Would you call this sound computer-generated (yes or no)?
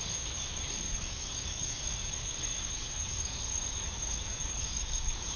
yes